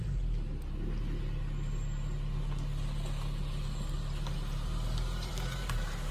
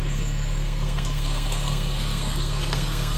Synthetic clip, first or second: second